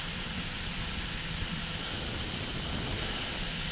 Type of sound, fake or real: real